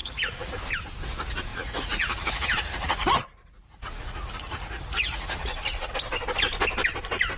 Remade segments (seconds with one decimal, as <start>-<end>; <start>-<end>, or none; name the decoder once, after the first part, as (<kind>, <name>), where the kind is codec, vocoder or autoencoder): 0.0-0.5 (vocoder, Vocos); 1.5-5.9